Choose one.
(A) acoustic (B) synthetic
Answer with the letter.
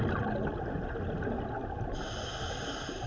A